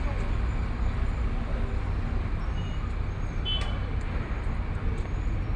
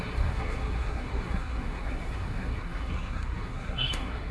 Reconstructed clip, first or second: second